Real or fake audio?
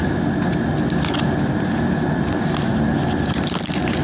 real